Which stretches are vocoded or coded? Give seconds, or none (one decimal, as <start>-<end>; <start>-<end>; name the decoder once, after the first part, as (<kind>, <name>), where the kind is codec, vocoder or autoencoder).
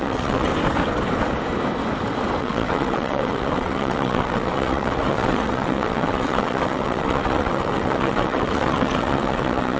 0.0-0.5 (vocoder, WaveNeXt); 2.4-9.8